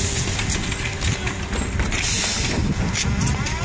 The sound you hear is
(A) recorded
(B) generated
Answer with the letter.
A